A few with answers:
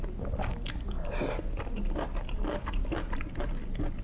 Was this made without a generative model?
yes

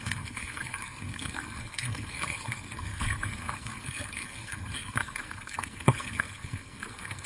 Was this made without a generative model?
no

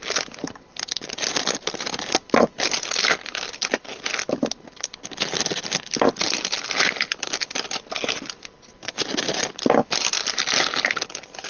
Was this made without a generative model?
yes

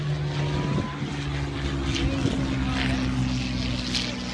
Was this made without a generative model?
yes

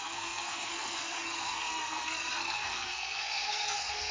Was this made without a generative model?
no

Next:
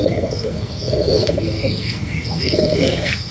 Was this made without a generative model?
no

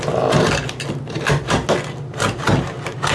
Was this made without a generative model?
yes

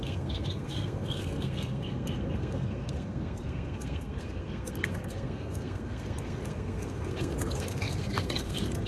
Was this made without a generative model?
no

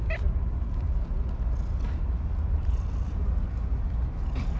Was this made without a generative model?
yes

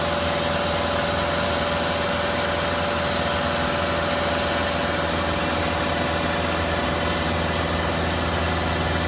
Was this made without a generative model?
yes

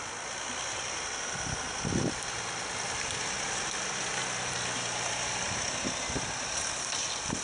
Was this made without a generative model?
yes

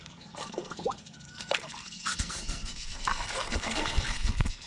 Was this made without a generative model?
no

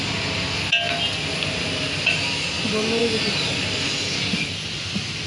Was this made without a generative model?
yes